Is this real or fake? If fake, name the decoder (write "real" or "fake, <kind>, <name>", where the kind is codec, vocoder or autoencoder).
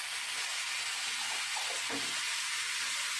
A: real